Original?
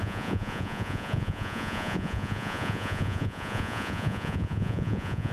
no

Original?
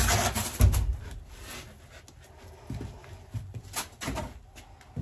yes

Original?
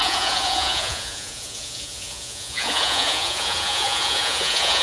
no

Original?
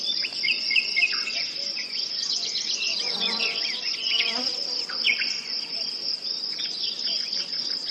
no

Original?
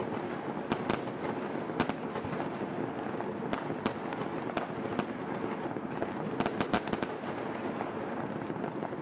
yes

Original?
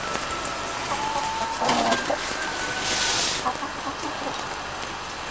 yes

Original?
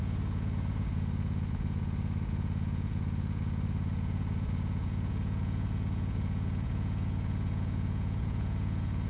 no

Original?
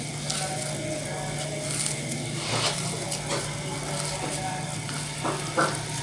yes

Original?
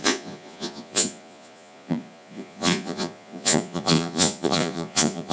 no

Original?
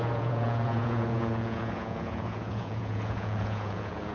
no